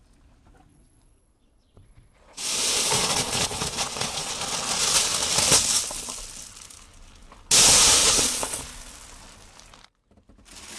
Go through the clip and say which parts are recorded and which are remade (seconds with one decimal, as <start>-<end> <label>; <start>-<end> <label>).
0.0-0.7 recorded; 0.7-4.3 remade; 4.3-8.0 recorded; 8.0-8.6 remade; 8.6-10.8 recorded